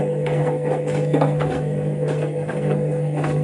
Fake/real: fake